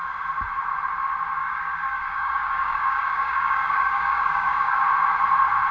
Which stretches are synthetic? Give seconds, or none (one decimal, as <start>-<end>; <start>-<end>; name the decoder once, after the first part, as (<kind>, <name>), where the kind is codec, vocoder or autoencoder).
1.4-4.8 (codec, DAC)